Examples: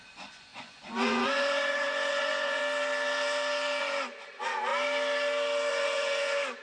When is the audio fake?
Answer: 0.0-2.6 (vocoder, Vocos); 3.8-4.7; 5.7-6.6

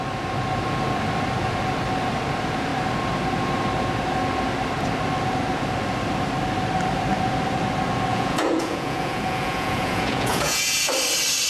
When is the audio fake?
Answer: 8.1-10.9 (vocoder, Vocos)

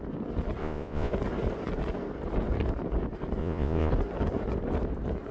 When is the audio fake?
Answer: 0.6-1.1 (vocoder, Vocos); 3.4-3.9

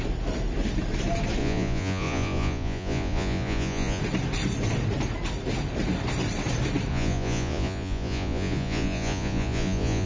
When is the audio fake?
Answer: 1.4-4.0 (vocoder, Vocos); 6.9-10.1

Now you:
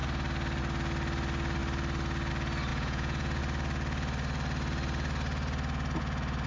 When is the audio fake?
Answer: 2.7-3.4 (vocoder, Vocos)